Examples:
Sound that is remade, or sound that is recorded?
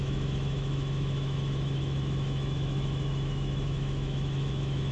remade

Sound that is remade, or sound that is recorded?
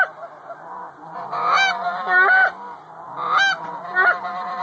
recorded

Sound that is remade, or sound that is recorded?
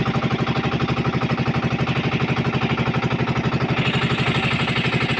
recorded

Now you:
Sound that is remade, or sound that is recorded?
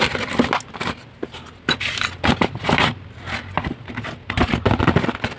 recorded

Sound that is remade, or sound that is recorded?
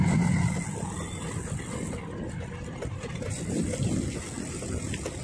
recorded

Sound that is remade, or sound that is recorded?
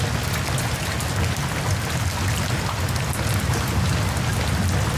recorded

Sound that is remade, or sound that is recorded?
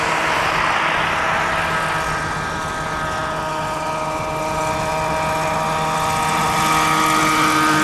recorded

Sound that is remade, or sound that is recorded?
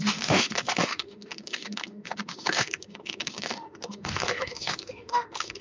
remade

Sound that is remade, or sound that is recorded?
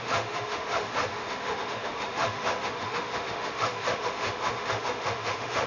remade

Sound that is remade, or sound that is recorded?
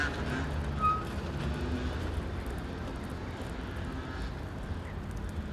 recorded